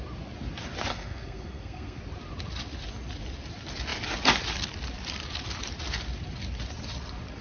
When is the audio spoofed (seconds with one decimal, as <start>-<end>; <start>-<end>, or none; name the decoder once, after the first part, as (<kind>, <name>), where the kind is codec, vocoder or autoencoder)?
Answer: 0.9-2.0 (codec, SNAC)

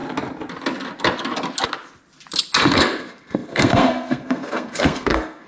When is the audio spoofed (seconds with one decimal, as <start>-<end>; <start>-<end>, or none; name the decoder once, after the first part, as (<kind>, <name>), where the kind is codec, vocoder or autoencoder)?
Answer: 2.6-5.5 (codec, SNAC)

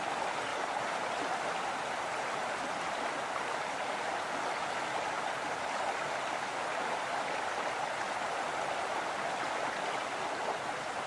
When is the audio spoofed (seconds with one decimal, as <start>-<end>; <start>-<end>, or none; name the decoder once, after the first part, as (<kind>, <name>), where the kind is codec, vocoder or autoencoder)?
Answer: none

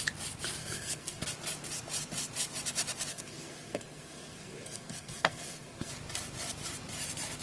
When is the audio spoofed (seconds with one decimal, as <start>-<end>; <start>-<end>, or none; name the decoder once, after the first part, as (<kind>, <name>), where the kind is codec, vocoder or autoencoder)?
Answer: 0.6-1.2 (codec, SNAC); 3.1-5.9

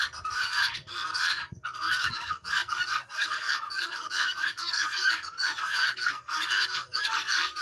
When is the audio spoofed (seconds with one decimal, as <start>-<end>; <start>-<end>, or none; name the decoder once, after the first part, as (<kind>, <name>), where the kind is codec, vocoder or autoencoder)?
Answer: 0.0-7.6 (codec, SNAC)

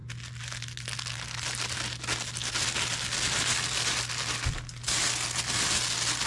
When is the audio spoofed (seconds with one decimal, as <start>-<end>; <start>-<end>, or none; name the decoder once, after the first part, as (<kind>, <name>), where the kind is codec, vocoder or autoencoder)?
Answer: none

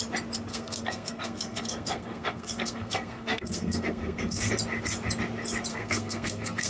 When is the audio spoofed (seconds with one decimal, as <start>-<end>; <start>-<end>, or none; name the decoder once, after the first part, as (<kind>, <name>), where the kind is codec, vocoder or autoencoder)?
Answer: 0.5-4.5 (codec, SNAC); 5.7-6.7